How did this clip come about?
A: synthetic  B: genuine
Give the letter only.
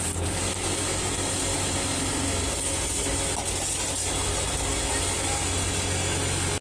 B